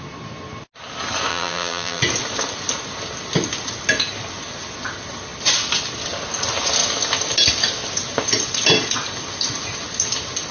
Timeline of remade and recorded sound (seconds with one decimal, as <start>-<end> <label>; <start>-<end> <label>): 0.0-1.3 recorded; 1.3-2.0 remade; 2.0-10.5 recorded